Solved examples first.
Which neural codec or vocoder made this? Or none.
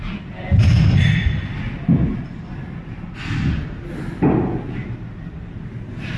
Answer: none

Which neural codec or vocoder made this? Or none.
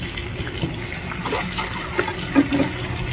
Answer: none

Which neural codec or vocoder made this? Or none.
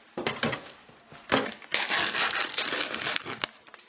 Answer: none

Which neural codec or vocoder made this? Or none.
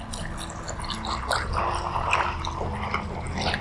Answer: none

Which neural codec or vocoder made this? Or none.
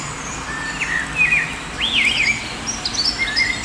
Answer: none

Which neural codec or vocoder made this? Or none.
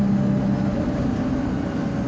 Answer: none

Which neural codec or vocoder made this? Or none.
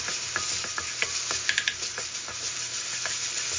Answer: none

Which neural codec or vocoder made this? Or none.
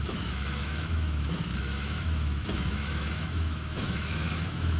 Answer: autoencoder, DAC-VAE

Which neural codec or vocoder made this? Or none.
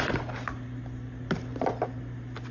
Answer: none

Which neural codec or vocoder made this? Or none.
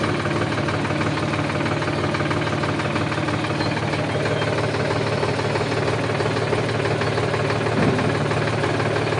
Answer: none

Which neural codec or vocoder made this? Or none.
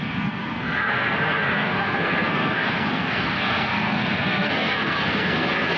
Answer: codec, SNAC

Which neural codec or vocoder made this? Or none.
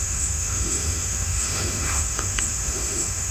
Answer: autoencoder, DAC-VAE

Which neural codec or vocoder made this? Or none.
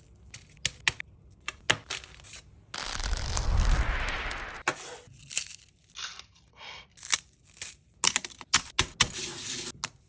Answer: none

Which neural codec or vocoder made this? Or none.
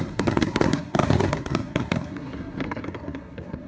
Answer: codec, SNAC